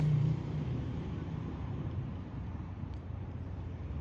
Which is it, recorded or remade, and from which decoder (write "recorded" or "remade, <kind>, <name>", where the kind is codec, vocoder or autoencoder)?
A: remade, vocoder, BigVGAN v2